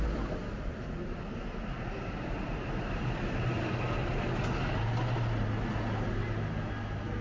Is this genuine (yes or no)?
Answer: yes